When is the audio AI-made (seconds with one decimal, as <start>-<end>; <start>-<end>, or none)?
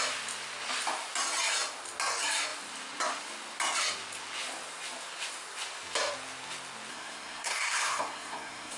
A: 6.9-8.8